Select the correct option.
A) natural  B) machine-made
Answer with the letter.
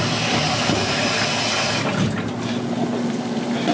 A